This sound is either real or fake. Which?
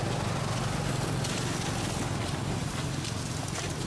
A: real